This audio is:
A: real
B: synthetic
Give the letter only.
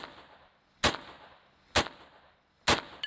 A